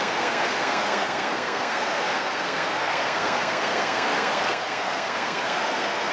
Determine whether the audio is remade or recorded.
remade